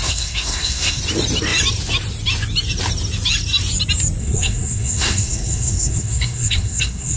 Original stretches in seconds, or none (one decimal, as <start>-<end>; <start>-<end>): 1.0-4.2